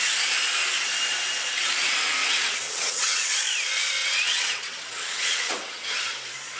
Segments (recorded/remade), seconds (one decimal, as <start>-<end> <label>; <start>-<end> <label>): 0.0-2.2 recorded; 2.2-3.3 remade; 3.3-4.0 recorded; 4.0-5.9 remade; 5.9-6.6 recorded